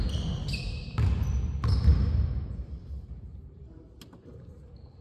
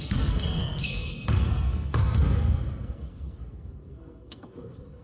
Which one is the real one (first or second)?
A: first